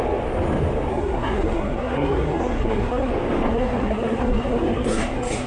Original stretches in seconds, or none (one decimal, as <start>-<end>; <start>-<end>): 0.0-0.9; 3.1-3.5